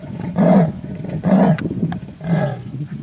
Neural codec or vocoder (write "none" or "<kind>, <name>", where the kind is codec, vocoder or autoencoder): vocoder, Vocos